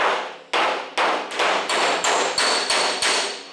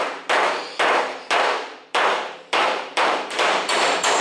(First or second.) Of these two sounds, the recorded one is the first